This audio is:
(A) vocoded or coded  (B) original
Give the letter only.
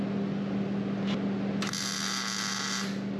B